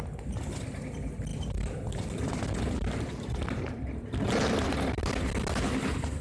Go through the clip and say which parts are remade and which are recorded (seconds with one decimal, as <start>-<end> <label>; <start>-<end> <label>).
0.0-6.2 recorded